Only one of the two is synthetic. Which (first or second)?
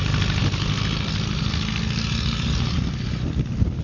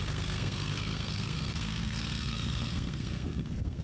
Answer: second